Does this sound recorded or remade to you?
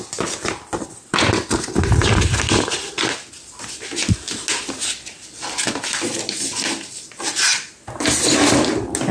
recorded